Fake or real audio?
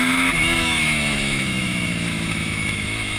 fake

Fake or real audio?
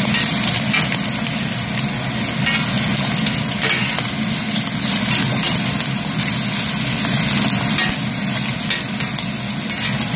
real